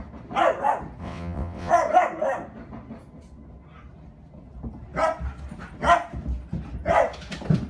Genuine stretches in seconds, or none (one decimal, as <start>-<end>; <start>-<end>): 0.0-1.0; 1.7-7.7